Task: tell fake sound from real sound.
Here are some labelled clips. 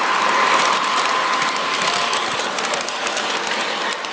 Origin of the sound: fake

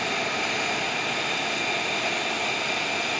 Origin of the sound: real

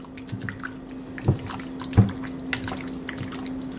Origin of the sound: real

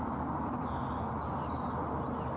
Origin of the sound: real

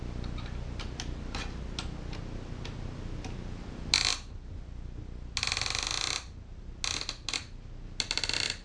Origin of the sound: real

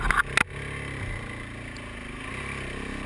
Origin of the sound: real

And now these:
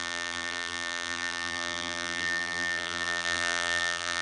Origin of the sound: fake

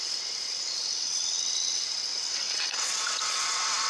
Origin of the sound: fake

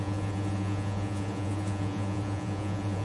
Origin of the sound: fake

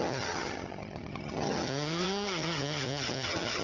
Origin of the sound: fake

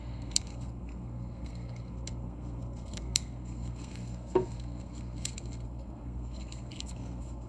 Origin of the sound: fake